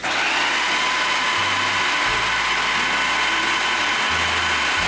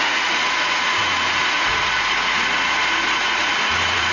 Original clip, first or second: first